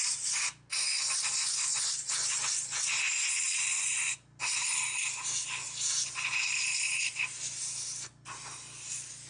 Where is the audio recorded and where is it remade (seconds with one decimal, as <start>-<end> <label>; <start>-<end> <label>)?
0.0-9.3 recorded